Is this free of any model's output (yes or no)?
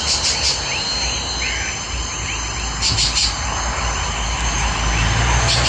yes